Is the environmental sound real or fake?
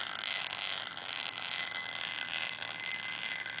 real